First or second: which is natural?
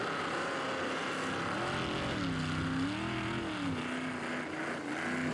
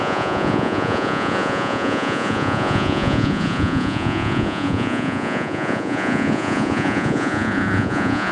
first